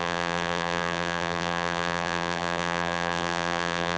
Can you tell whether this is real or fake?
fake